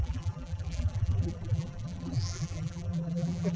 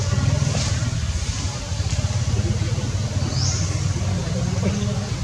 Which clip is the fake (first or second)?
first